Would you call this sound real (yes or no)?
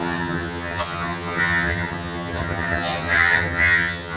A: no